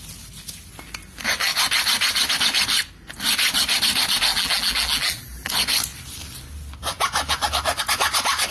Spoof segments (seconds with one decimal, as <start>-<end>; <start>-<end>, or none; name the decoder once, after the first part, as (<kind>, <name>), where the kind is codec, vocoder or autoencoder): 4.3-5.5 (vocoder, BigVGAN v2)